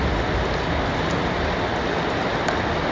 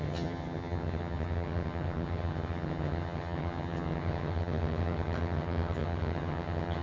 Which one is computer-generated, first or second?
second